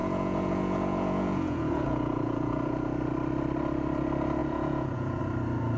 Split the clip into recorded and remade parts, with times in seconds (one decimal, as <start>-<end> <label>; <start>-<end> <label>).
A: 0.0-3.1 remade; 3.1-4.4 recorded; 4.4-5.2 remade; 5.2-5.8 recorded

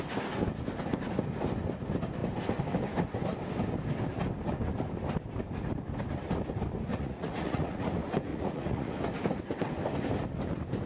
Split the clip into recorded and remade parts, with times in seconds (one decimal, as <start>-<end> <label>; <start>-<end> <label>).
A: 0.0-6.9 recorded; 6.9-7.9 remade; 7.9-8.3 recorded; 8.3-9.0 remade; 9.0-10.9 recorded

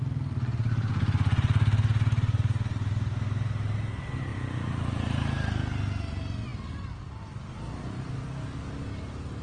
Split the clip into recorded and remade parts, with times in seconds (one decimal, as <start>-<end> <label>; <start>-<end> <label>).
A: 0.0-9.4 recorded

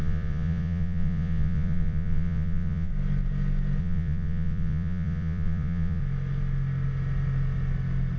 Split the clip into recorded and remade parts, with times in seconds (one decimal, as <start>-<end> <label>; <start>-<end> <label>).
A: 0.0-2.9 remade; 2.9-3.8 recorded; 3.8-6.0 remade; 6.0-8.2 recorded

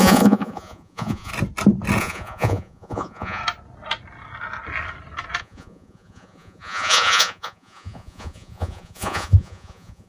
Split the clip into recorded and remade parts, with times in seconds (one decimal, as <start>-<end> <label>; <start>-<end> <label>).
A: 0.0-1.3 remade; 1.3-2.0 recorded; 2.0-3.4 remade; 3.4-5.4 recorded; 5.4-10.1 remade

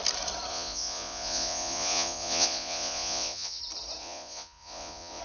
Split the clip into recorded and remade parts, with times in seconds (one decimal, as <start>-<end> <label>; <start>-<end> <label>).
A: 0.0-0.5 recorded; 0.5-3.6 remade; 3.6-4.0 recorded; 4.0-5.2 remade

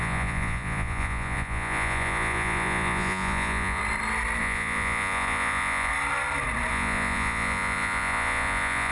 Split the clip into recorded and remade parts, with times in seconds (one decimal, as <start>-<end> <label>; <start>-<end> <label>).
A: 0.0-3.8 remade; 3.8-4.4 recorded; 4.4-5.9 remade; 5.9-6.7 recorded; 6.7-8.9 remade